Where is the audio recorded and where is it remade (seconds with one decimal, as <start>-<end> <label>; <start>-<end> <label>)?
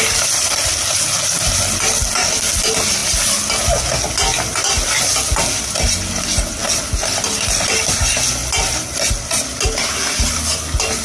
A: 0.0-11.0 recorded